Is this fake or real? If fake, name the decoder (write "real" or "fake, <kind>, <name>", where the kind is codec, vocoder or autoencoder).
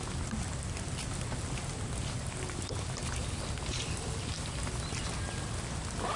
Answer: real